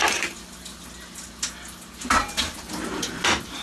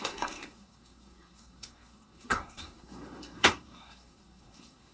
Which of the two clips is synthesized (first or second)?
second